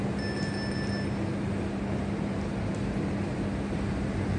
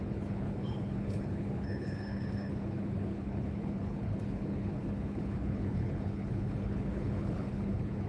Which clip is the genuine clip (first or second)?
first